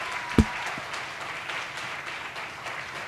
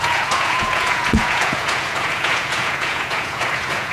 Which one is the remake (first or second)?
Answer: second